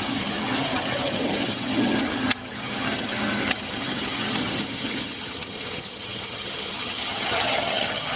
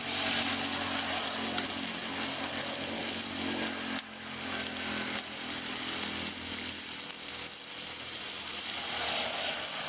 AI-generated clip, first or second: first